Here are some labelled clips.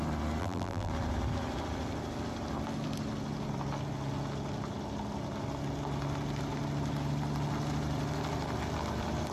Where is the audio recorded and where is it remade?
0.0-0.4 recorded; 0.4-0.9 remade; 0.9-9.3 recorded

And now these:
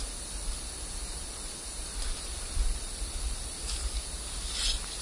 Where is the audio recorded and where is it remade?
0.0-1.6 recorded; 1.6-3.9 remade; 3.9-5.0 recorded

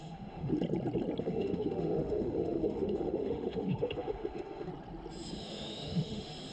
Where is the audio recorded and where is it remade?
0.0-0.5 remade; 0.5-1.2 recorded; 1.2-4.7 remade; 4.7-5.4 recorded; 5.4-6.5 remade